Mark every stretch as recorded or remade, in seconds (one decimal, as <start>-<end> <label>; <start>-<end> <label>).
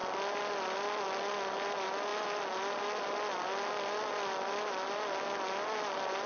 0.0-6.3 recorded